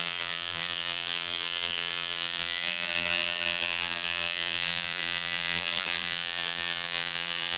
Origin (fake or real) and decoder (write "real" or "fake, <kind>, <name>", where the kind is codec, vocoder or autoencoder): fake, vocoder, BigVGAN v2